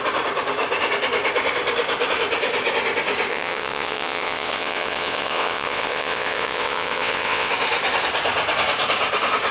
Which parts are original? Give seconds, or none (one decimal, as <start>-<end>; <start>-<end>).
0.0-3.3; 7.5-9.5